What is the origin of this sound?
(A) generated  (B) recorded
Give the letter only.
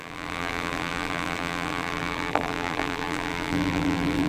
A